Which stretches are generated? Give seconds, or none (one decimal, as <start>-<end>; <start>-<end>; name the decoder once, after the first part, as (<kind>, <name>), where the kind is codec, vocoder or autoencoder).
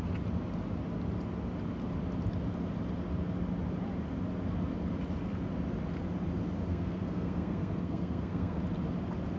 6.7-8.6 (codec, SNAC)